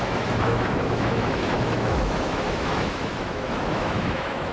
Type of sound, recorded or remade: remade